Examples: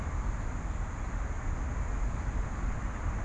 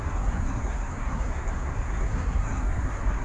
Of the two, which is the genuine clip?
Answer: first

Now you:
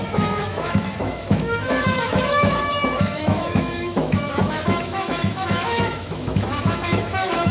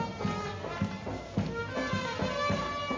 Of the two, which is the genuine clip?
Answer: second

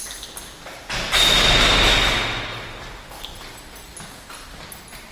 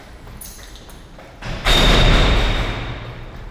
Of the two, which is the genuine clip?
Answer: first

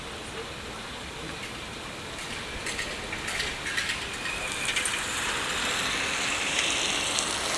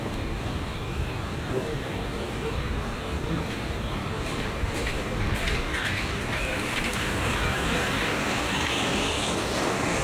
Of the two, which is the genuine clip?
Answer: first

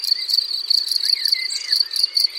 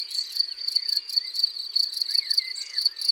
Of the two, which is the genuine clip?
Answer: first